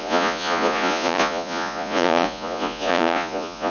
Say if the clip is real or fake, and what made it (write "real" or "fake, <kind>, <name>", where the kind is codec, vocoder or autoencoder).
fake, vocoder, Vocos